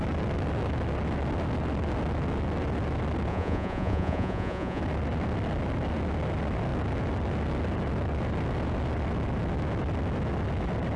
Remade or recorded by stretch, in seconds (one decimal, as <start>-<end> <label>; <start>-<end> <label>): 0.0-3.3 recorded; 3.3-4.8 remade; 4.8-11.0 recorded